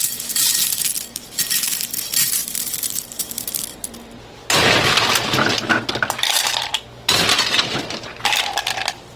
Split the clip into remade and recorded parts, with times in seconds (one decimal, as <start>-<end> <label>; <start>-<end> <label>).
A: 0.0-4.4 remade; 4.4-6.1 recorded; 6.1-6.7 remade; 6.7-7.5 recorded; 7.5-9.2 remade